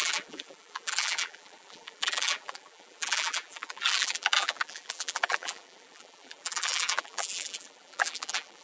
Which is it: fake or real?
fake